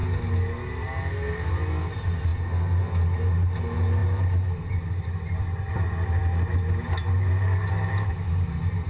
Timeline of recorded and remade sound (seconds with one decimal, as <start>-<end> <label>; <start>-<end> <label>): 0.0-8.9 recorded